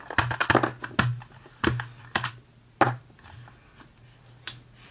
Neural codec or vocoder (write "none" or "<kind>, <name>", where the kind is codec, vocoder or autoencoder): none